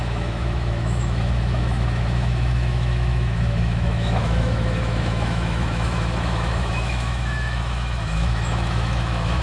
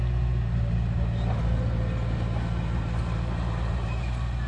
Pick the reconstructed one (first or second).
first